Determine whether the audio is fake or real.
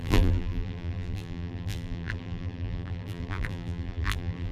fake